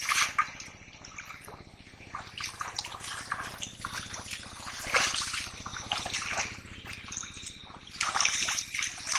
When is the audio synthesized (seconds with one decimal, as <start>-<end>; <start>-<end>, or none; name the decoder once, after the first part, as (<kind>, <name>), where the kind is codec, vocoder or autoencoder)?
none